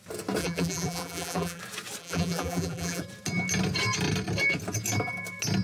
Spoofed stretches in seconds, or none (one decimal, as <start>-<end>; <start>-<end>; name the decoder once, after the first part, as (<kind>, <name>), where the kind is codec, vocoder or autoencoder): 0.4-1.6 (vocoder, BigVGAN v2); 2.0-3.0